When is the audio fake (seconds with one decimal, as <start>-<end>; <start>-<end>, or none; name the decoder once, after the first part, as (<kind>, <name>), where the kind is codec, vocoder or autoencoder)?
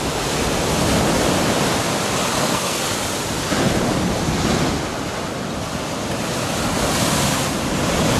2.3-2.8 (codec, SNAC)